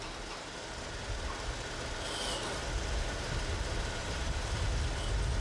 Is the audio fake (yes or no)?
no